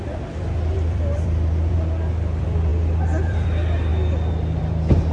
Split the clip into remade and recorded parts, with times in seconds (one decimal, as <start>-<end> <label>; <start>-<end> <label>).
0.0-2.7 remade; 2.7-3.3 recorded; 3.3-3.9 remade; 3.9-4.6 recorded; 4.6-5.1 remade